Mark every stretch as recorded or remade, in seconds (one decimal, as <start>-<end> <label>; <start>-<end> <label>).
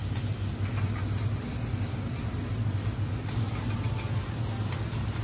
0.0-5.2 recorded